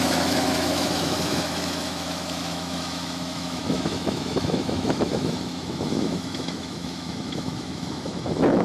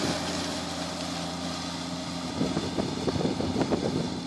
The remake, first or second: first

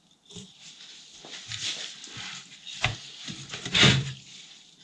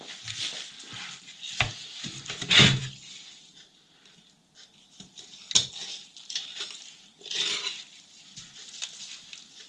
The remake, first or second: first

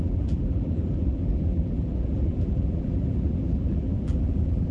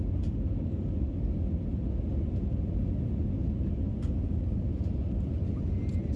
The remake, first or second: first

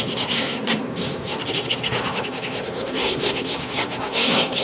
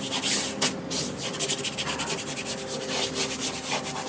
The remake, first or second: first